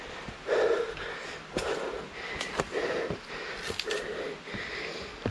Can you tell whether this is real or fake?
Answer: real